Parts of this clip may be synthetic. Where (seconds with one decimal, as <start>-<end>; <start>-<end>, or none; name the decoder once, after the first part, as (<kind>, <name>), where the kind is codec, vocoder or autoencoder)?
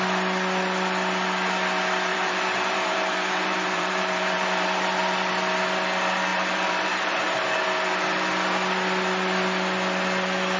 2.1-5.3 (vocoder, BigVGAN v2); 6.3-7.4